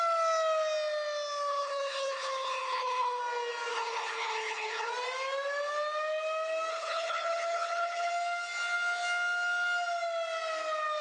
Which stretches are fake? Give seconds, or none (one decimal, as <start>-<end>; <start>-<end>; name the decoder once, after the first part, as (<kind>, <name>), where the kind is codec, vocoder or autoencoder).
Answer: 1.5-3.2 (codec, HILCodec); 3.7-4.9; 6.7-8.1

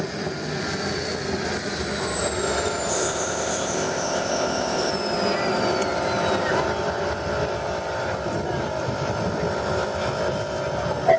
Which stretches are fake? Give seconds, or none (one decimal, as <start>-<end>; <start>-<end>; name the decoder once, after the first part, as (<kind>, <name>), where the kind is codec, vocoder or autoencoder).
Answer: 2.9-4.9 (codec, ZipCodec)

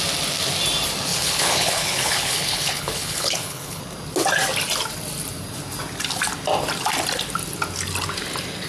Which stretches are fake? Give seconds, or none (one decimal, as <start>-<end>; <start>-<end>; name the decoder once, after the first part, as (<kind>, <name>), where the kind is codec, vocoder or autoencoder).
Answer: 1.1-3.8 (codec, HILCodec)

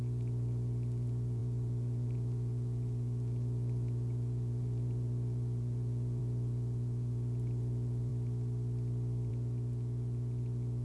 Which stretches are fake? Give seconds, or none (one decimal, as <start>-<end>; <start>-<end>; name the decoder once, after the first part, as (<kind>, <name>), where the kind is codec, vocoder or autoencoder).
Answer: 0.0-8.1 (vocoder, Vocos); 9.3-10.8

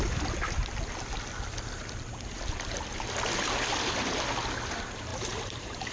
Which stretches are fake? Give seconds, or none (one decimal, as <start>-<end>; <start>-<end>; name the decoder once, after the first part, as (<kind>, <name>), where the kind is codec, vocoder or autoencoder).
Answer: 5.1-5.9 (vocoder, BigVGAN v2)